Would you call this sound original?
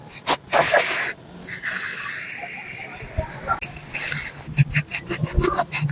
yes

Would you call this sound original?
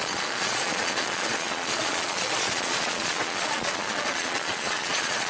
no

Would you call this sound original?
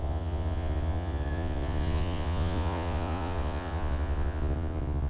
no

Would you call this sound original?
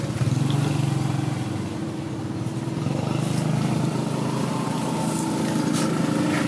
yes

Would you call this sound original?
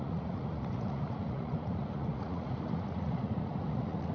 no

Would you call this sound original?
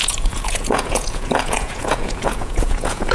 no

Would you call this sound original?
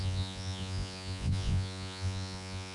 no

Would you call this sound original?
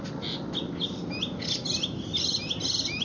yes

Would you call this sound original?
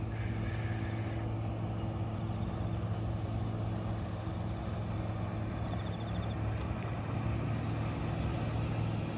yes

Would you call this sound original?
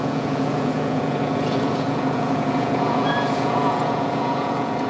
no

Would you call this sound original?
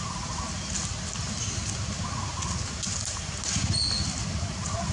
yes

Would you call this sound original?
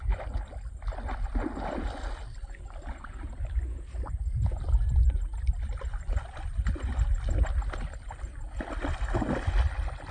yes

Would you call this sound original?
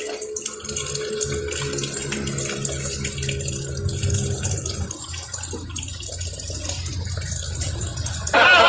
yes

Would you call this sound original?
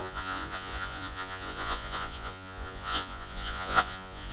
no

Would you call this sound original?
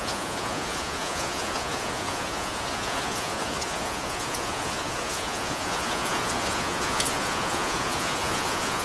no